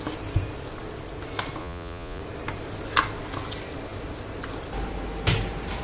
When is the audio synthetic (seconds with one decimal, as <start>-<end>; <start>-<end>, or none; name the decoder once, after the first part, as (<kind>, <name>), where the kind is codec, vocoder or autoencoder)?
1.6-2.2 (vocoder, Vocos)